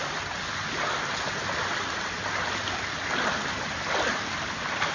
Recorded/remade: recorded